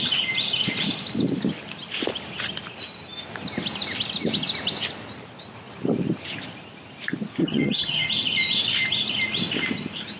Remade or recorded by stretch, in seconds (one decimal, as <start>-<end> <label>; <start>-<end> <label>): 0.0-7.4 recorded; 7.4-8.1 remade; 8.1-10.2 recorded